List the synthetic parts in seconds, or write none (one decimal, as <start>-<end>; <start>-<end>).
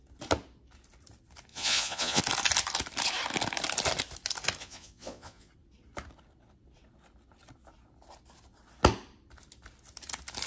1.5-2.2; 4.6-5.5